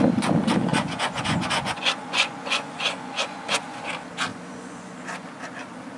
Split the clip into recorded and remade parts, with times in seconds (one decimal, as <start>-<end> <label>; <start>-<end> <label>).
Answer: 0.0-0.7 recorded; 0.7-3.9 remade; 3.9-4.3 recorded; 4.3-5.4 remade; 5.4-6.0 recorded